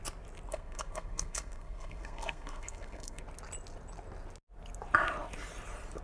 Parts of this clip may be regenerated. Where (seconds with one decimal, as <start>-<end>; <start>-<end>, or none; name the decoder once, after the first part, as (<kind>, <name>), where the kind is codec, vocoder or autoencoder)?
0.5-3.2 (codec, SNAC)